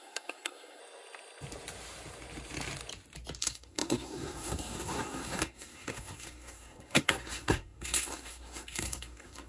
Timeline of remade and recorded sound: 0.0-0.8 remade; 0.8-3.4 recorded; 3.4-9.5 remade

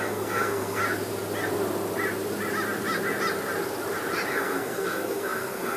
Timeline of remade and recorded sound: 0.0-0.8 remade; 0.8-4.3 recorded; 4.3-5.8 remade

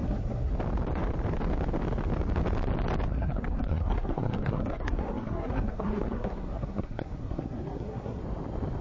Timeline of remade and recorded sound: 0.0-0.5 remade; 0.5-3.1 recorded; 3.1-8.2 remade; 8.2-8.8 recorded

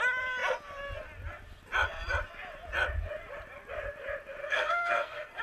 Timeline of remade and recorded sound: 0.0-4.4 recorded; 4.4-5.4 remade

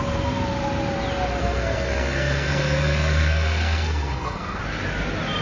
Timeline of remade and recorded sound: 0.0-1.4 recorded; 1.4-4.6 remade; 4.6-5.4 recorded